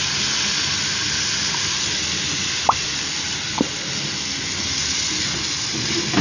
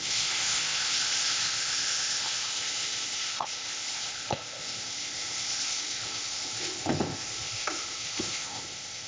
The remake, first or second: second